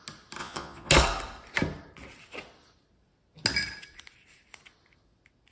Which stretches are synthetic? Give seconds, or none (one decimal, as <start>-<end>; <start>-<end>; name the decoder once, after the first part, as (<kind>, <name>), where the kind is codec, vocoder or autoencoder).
0.4-0.9 (vocoder, Vocos)